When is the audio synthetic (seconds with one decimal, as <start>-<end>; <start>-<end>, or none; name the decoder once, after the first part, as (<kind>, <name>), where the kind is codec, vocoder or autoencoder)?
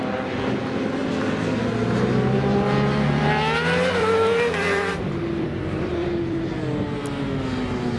4.0-6.5 (vocoder, BigVGAN v2)